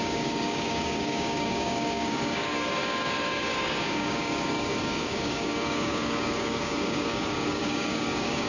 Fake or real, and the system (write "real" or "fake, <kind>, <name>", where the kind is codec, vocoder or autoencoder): fake, codec, DAC